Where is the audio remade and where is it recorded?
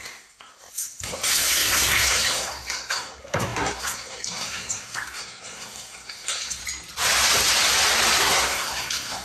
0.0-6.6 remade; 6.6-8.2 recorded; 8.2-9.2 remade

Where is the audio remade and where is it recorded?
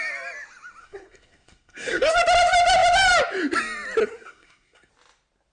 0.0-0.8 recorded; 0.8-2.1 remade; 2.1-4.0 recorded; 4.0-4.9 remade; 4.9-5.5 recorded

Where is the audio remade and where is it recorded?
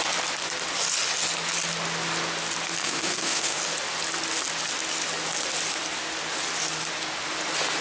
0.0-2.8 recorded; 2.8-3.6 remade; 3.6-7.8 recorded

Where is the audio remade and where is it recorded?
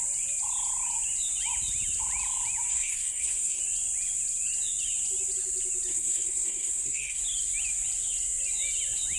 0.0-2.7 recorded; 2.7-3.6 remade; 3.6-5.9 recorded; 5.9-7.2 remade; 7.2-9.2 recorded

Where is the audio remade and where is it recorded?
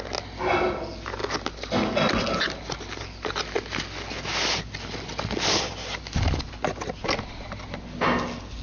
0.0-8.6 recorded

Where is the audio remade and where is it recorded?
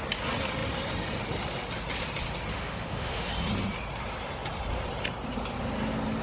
0.0-2.5 recorded; 2.5-3.3 remade; 3.3-6.2 recorded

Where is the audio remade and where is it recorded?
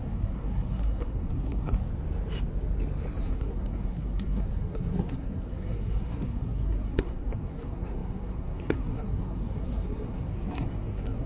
0.0-1.9 remade; 1.9-3.2 recorded; 3.2-11.3 remade